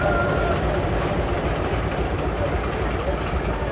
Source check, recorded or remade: recorded